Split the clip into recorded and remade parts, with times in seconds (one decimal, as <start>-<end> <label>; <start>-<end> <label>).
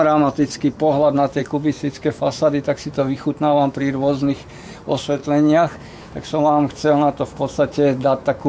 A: 0.0-1.4 recorded; 1.4-3.8 remade; 3.8-5.2 recorded; 5.2-8.5 remade